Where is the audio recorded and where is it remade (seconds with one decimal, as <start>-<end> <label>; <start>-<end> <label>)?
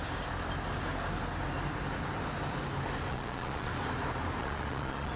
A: 0.0-3.1 recorded; 3.1-3.7 remade; 3.7-4.4 recorded; 4.4-5.2 remade